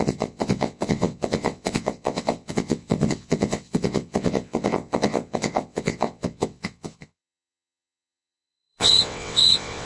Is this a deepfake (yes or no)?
yes